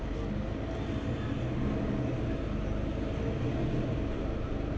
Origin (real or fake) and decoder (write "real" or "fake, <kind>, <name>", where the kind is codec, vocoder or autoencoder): real